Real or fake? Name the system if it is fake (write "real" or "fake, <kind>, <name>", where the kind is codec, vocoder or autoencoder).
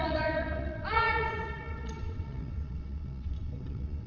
fake, vocoder, WaveNeXt